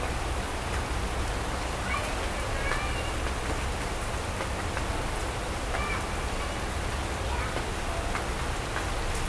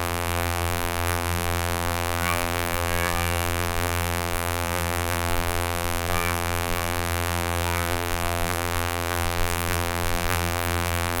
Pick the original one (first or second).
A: first